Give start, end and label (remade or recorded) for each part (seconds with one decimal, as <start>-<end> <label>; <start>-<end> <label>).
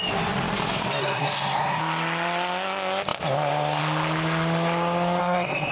0.0-1.0 recorded; 1.0-1.8 remade; 1.8-5.2 recorded; 5.2-5.7 remade